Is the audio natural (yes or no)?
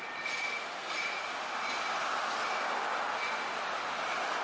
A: no